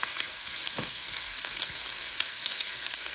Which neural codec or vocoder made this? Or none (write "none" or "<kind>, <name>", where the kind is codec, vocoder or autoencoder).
codec, SNAC